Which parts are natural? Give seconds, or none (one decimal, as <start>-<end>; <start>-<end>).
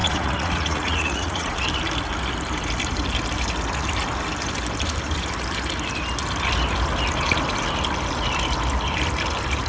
1.6-9.7